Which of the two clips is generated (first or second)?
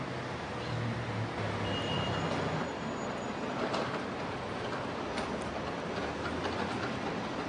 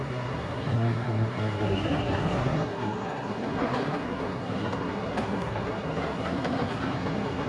second